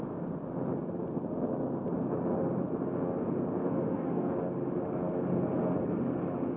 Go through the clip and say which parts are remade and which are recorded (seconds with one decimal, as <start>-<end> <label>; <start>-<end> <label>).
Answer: 0.0-3.6 recorded; 3.6-4.3 remade; 4.3-6.6 recorded